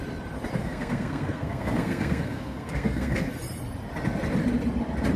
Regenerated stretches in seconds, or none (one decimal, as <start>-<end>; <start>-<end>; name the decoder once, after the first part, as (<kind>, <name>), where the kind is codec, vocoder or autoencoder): 0.6-3.3 (codec, SNAC)